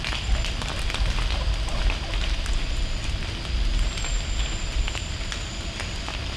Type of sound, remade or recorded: recorded